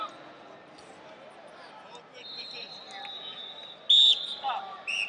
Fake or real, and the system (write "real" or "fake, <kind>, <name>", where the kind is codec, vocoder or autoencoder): real